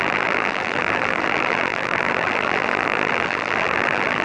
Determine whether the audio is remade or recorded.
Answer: remade